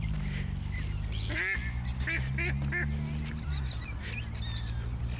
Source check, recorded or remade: recorded